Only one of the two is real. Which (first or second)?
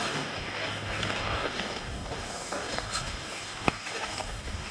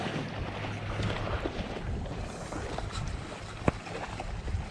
second